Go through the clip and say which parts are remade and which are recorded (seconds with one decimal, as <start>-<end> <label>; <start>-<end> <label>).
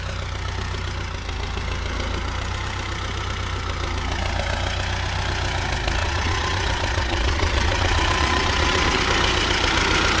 0.0-6.0 recorded; 6.0-9.0 remade; 9.0-10.2 recorded